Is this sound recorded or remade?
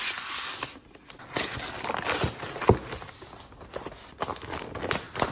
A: recorded